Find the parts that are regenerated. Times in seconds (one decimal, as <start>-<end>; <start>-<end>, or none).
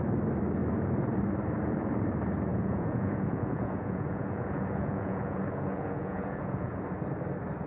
2.5-6.8